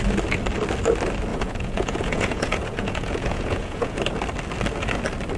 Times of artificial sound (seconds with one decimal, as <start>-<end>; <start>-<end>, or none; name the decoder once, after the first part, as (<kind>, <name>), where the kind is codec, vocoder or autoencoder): 1.3-4.0 (vocoder, Vocos)